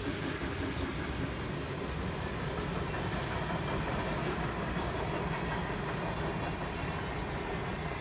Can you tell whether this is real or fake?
real